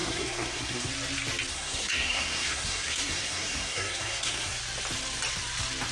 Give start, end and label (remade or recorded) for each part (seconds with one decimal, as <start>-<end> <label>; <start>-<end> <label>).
0.0-0.9 remade; 0.9-1.5 recorded; 1.5-4.6 remade; 4.6-5.9 recorded